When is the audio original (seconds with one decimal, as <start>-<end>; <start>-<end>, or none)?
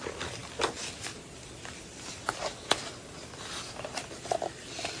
0.0-5.0